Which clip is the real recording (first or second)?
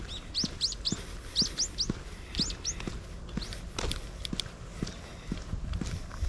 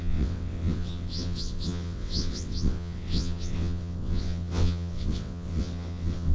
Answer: first